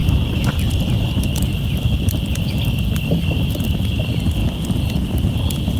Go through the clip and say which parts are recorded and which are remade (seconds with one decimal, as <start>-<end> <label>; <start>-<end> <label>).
0.0-5.8 recorded